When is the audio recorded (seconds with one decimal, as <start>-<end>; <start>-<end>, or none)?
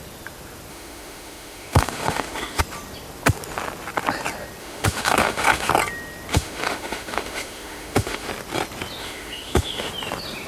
0.0-0.7; 2.6-4.6; 5.7-6.3; 8.3-9.0; 9.9-10.5